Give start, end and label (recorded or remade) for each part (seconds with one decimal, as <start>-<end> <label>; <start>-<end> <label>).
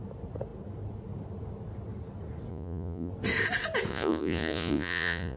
0.0-2.5 recorded; 2.5-3.1 remade; 3.1-3.9 recorded; 3.9-5.4 remade